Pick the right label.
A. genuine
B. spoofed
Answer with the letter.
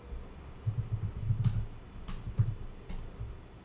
A